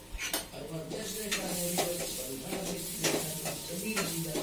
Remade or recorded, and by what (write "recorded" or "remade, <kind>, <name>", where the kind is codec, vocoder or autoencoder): recorded